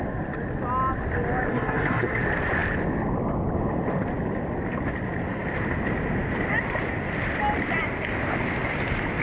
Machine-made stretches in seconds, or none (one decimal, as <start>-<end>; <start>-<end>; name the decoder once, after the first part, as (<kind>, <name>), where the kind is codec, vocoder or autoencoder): 1.5-2.2 (codec, SNAC)